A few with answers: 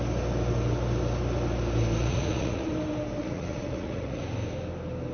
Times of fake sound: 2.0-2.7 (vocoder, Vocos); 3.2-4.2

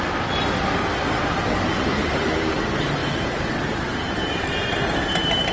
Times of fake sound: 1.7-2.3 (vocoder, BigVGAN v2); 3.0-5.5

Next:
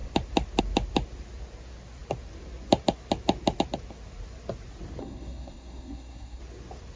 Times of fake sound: 5.0-6.4 (codec, SNAC)

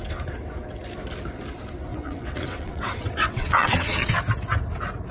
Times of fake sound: 1.9-4.2 (vocoder, WaveNeXt)

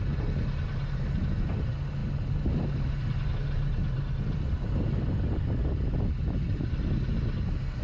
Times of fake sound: none

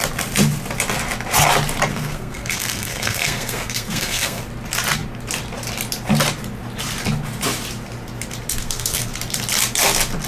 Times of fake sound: 1.9-4.4 (codec, SNAC); 8.6-9.1

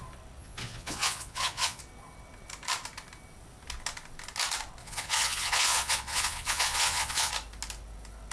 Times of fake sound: 0.4-1.8 (vocoder, Vocos); 4.8-7.3